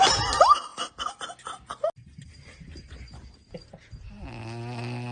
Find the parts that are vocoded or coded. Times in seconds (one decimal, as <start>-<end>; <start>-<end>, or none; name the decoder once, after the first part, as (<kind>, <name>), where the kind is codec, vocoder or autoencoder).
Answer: none